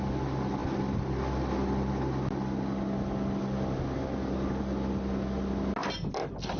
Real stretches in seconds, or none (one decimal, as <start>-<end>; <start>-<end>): 0.0-6.6